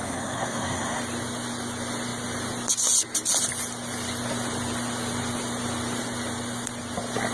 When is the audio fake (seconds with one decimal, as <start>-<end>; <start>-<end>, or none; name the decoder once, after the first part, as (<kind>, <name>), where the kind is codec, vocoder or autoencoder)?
0.0-1.0 (codec, SNAC)